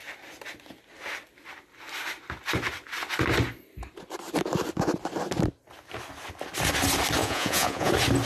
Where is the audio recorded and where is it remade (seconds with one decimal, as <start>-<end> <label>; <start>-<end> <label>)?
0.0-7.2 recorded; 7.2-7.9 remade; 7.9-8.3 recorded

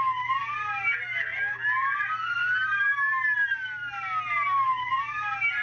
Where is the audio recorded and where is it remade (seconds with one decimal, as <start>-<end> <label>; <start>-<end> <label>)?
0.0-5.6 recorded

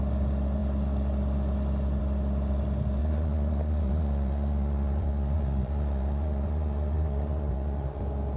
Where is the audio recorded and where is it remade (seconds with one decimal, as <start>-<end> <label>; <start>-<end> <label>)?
0.0-3.0 recorded; 3.0-8.0 remade; 8.0-8.4 recorded

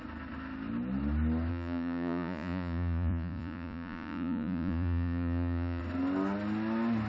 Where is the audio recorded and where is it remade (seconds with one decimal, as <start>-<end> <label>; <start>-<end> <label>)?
0.0-1.5 recorded; 1.5-5.8 remade; 5.8-7.1 recorded

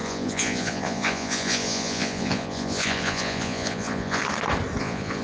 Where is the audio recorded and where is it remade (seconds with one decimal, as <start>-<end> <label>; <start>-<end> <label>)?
0.0-4.2 remade; 4.2-4.8 recorded; 4.8-5.2 remade

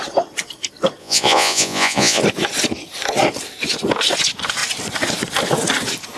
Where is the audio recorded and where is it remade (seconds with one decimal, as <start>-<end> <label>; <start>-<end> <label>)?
0.0-1.0 recorded; 1.0-2.2 remade; 2.2-6.2 recorded

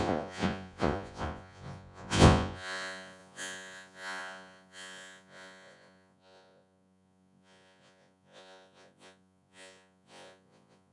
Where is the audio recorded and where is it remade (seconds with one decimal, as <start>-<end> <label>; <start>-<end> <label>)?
0.0-10.9 remade